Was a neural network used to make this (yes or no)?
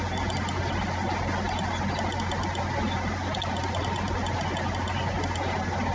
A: no